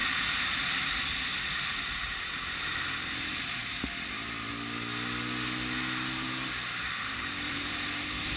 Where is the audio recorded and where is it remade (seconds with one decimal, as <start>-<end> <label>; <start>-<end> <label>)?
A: 0.0-1.3 remade; 1.3-2.6 recorded; 2.6-3.6 remade; 3.6-6.8 recorded; 6.8-8.4 remade